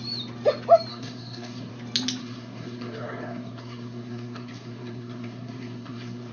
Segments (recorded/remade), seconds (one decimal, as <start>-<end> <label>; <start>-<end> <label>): 0.0-0.9 recorded; 0.9-1.7 remade; 1.7-2.2 recorded; 2.2-6.3 remade